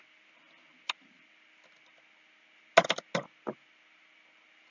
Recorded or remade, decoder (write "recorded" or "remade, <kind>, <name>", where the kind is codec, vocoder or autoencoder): recorded